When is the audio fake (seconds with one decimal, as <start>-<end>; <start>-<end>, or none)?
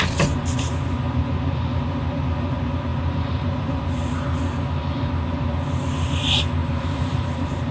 2.9-3.8; 6.6-7.7